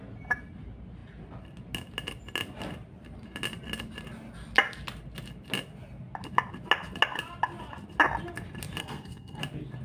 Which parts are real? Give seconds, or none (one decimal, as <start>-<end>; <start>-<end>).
0.0-8.8; 9.4-9.8